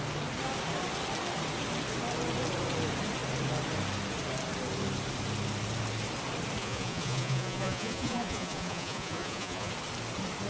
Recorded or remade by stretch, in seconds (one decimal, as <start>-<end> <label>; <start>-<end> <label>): 0.0-6.6 recorded; 6.6-9.7 remade; 9.7-10.5 recorded